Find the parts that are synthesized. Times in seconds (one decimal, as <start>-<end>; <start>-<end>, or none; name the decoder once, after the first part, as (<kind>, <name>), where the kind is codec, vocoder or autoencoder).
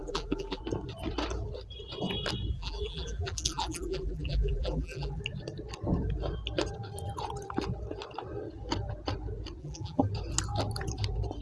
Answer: 0.0-0.6 (vocoder, BigVGAN v2); 2.5-5.2; 9.6-10.1